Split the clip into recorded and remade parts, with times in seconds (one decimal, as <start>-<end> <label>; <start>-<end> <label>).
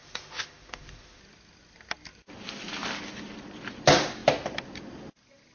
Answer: 0.0-1.2 remade; 1.2-5.5 recorded